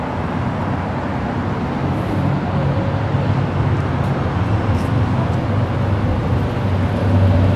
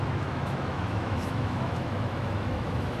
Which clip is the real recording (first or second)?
first